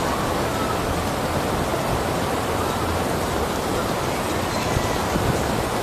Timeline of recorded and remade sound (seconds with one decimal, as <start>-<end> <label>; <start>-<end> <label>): 0.0-5.8 recorded